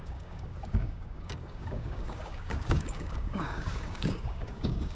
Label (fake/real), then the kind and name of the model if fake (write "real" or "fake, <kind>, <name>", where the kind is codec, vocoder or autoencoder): fake, codec, DAC